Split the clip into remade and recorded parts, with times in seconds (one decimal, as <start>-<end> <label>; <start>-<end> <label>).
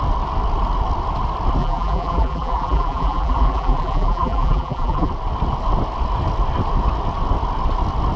0.0-1.6 recorded; 1.6-5.1 remade; 5.1-8.2 recorded